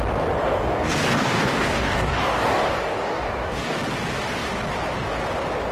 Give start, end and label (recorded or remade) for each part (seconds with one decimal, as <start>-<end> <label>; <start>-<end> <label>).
0.0-0.4 recorded; 0.4-3.8 remade; 3.8-5.7 recorded